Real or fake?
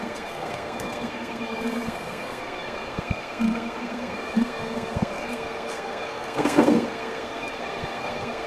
fake